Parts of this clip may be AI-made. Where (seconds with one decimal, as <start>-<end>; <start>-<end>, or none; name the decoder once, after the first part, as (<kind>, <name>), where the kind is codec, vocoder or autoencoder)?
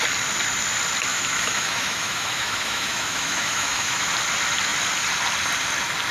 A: 1.1-4.1 (autoencoder, DAC-VAE)